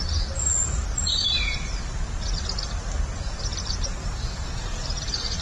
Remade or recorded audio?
recorded